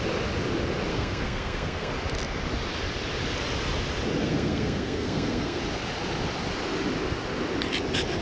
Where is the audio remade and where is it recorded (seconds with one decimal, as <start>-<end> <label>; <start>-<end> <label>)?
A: 0.0-0.9 recorded; 0.9-1.9 remade; 1.9-4.2 recorded; 4.2-5.6 remade; 5.6-8.2 recorded